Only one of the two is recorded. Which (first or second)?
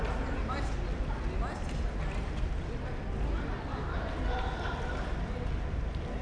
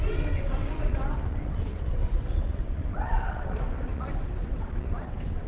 first